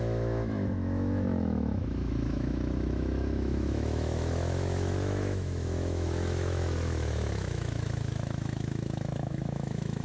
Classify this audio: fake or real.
fake